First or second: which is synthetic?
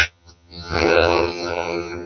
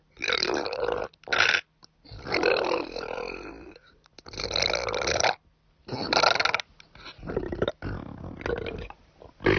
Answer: first